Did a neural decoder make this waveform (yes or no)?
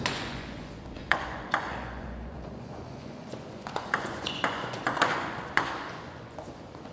yes